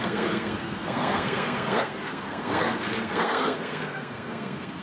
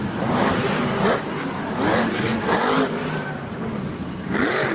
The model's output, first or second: first